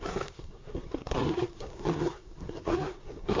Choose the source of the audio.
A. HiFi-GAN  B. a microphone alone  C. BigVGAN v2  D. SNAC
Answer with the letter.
D